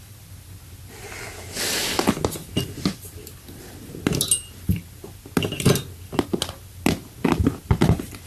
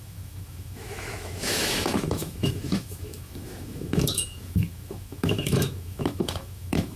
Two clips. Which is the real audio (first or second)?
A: first